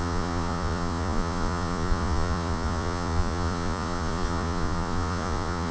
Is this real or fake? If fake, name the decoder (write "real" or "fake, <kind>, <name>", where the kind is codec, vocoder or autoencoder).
fake, vocoder, Vocos